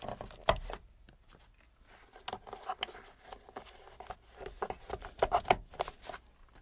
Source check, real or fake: real